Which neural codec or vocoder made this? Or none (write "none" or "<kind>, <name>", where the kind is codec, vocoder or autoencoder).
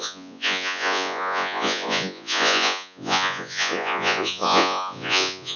vocoder, Vocos